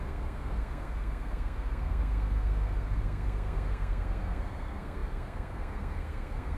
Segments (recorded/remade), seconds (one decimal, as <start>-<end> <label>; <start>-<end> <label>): 0.0-6.6 remade